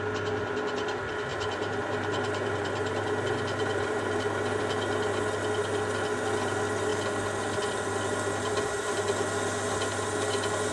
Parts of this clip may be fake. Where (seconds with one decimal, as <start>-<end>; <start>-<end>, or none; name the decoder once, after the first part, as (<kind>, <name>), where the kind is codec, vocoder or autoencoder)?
1.3-4.6 (vocoder, BigVGAN v2)